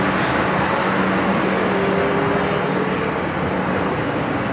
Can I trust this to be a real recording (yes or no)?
yes